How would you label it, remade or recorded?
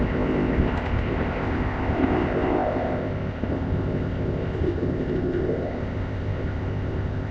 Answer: remade